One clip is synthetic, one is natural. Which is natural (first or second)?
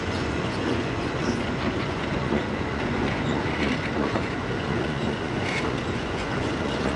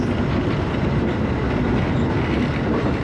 second